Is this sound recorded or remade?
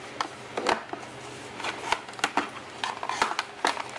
recorded